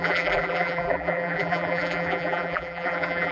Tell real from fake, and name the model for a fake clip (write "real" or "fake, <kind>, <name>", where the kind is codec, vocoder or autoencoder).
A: fake, vocoder, BigVGAN v2